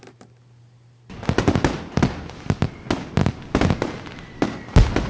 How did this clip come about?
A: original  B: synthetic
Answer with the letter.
A